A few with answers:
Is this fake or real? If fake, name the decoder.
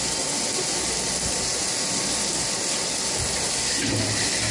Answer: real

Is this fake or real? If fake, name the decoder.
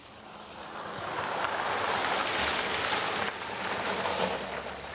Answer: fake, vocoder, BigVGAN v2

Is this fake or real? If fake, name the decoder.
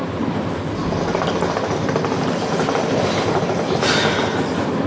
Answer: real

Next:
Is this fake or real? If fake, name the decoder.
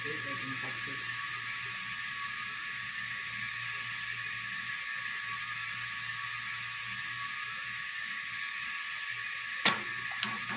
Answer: real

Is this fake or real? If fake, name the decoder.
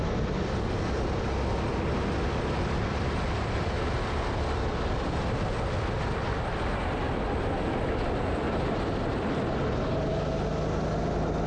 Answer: real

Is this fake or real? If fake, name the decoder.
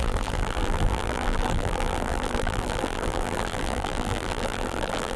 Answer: fake, vocoder, BigVGAN v2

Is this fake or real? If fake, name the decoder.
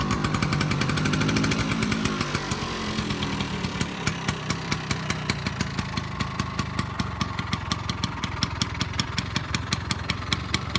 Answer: fake, vocoder, BigVGAN v2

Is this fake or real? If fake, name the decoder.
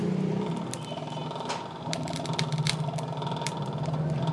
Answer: real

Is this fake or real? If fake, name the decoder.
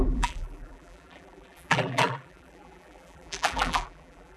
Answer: fake, vocoder, BigVGAN v2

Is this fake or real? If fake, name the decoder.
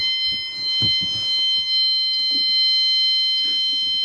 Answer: real